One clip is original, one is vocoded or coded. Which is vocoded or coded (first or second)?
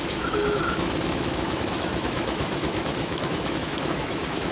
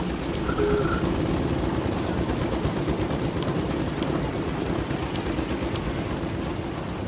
first